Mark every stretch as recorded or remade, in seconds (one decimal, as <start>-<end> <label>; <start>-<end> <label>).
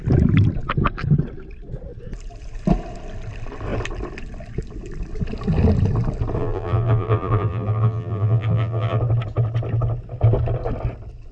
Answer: 0.0-6.4 recorded; 6.4-9.0 remade; 9.0-11.3 recorded